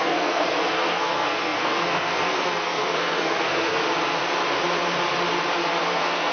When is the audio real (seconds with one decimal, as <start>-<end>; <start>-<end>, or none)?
3.8-5.8